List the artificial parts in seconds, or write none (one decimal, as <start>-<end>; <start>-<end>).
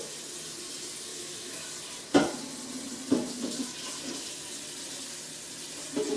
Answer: 1.1-1.7